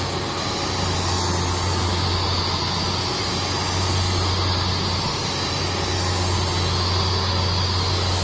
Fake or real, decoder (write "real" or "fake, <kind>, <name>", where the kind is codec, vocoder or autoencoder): real